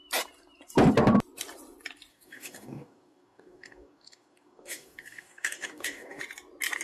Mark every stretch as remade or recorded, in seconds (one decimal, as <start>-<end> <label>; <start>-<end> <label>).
0.0-2.1 recorded; 2.1-6.2 remade; 6.2-6.8 recorded